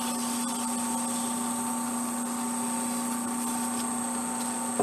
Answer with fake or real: real